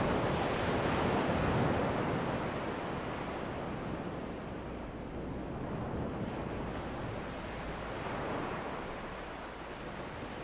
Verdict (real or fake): real